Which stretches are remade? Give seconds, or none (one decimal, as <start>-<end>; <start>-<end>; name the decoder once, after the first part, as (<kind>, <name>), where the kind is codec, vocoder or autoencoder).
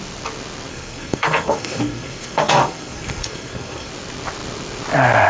0.7-3.9 (codec, SNAC)